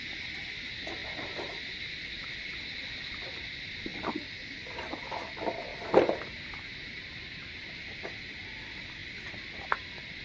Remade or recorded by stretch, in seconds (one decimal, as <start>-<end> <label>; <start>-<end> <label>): 0.0-10.2 recorded